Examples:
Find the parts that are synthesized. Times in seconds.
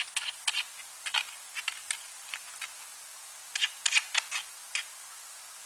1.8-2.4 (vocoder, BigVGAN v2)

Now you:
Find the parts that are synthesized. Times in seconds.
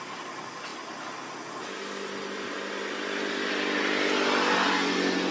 none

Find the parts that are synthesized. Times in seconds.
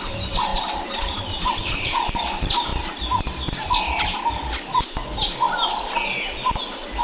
0.0-2.7 (vocoder, BigVGAN v2)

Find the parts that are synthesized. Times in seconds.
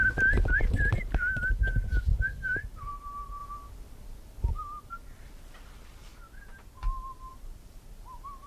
0.6-3.4 (vocoder, BigVGAN v2); 4.5-6.1; 7.3-8.5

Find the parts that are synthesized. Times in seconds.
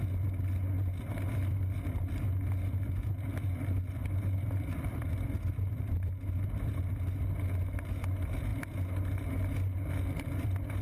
3.3-6.9 (vocoder, BigVGAN v2)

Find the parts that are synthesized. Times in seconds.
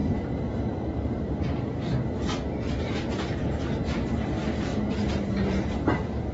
0.0-2.1 (vocoder, BigVGAN v2)